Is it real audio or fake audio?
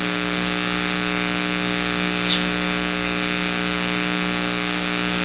fake